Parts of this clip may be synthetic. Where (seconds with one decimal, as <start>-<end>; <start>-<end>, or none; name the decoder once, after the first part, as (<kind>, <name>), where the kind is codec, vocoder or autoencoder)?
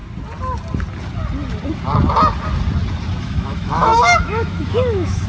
3.2-5.3 (autoencoder, DAC-VAE)